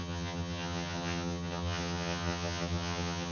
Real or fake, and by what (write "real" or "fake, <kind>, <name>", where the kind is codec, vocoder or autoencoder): fake, vocoder, HiFi-GAN